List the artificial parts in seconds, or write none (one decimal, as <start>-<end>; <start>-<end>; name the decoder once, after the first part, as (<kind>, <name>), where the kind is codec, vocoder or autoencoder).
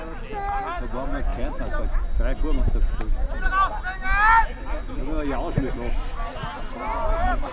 none